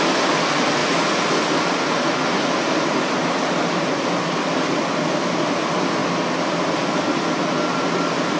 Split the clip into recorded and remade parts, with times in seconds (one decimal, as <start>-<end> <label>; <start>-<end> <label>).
0.0-8.4 recorded